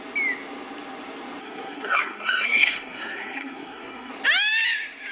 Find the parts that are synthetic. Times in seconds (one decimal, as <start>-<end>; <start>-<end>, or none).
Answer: 1.4-4.1